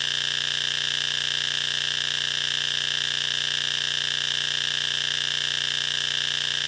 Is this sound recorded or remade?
recorded